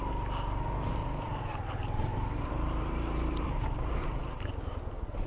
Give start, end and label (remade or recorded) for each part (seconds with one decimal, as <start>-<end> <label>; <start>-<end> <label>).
0.0-1.0 recorded; 1.0-4.2 remade; 4.2-5.3 recorded